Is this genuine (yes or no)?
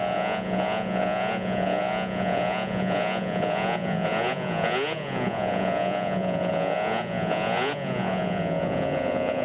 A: no